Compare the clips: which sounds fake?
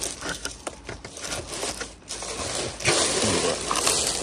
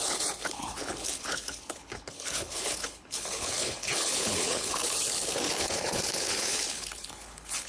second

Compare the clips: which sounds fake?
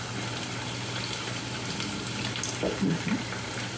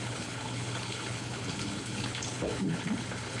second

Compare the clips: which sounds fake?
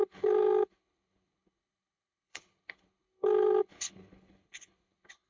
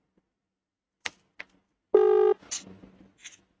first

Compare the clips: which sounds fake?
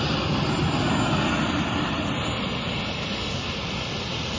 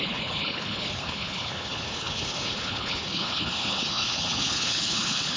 second